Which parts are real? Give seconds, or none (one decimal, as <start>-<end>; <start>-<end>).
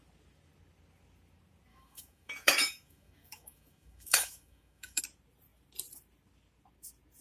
0.0-1.7; 5.0-7.2